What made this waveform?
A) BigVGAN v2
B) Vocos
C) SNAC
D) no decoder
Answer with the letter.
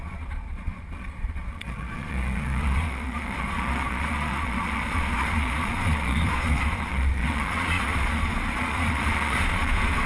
B